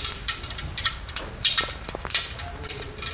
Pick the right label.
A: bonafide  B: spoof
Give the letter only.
B